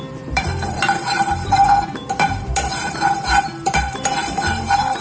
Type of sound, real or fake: fake